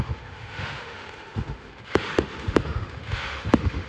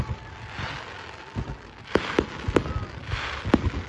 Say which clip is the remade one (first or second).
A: first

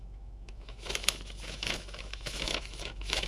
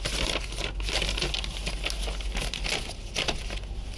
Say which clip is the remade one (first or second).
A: first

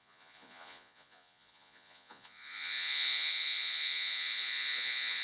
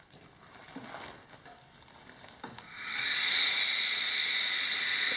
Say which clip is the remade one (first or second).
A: first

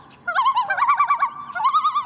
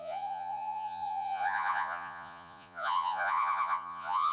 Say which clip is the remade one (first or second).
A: second